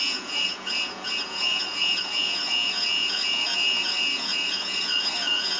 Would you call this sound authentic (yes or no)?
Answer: no